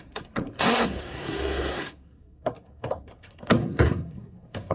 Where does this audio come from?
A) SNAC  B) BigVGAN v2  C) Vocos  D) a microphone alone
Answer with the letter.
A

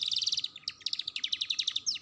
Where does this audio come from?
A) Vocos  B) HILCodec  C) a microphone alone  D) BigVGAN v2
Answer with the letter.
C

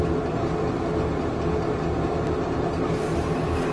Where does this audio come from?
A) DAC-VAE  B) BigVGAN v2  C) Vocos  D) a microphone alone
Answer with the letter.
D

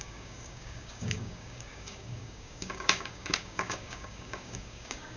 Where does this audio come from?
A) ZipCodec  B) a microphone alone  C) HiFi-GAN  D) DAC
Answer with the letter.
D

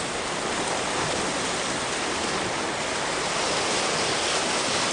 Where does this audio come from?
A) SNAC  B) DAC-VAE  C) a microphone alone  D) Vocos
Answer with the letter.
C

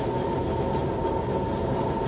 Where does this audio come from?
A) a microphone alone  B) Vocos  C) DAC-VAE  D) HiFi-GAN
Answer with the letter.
A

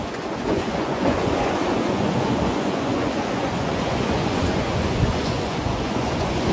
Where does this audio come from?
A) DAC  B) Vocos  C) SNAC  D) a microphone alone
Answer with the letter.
B